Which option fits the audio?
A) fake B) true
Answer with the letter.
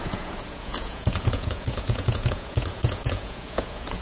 A